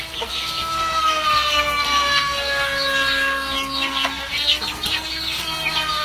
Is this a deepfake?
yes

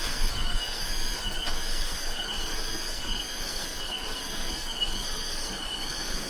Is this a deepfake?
yes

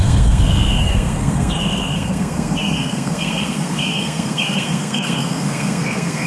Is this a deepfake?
yes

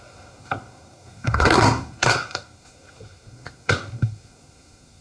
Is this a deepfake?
yes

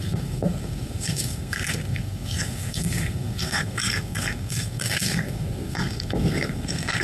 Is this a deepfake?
yes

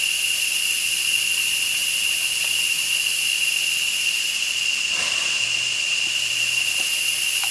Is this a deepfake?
no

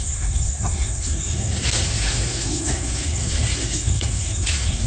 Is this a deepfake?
yes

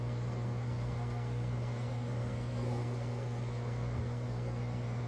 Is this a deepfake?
yes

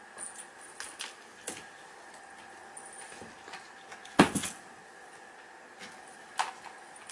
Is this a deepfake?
no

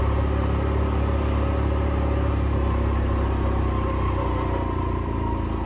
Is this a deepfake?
no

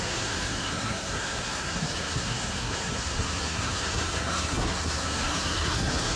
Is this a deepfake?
yes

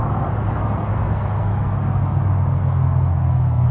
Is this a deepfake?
yes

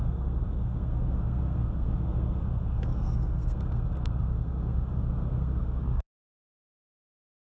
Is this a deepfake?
yes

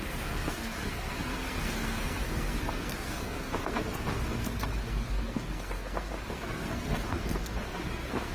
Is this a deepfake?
yes